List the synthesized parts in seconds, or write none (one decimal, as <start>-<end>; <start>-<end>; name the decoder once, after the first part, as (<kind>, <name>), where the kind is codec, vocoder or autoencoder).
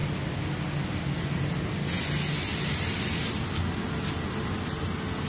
none